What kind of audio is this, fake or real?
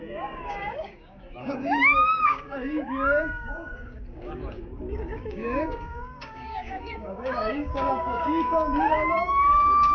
fake